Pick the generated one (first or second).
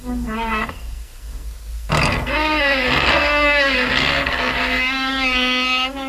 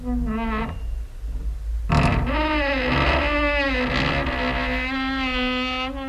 first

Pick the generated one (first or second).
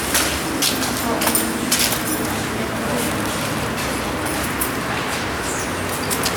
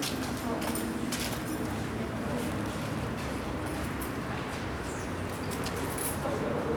second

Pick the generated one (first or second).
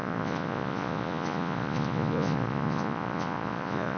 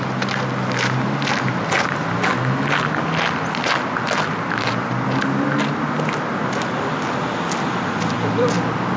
first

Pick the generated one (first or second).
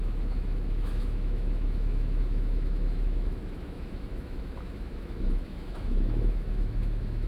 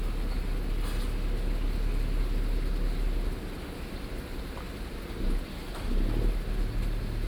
first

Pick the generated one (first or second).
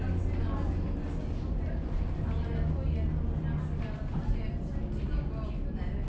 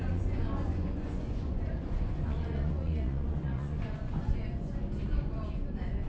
second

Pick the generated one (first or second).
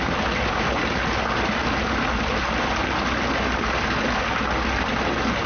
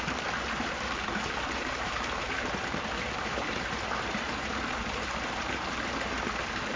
second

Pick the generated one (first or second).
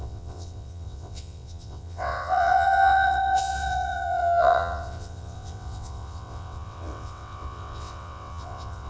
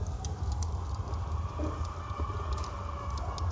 first